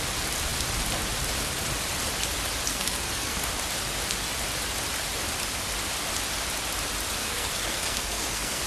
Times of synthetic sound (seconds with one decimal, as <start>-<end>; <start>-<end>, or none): 2.7-3.5; 7.2-8.7